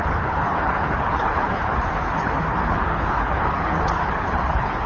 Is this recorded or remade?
remade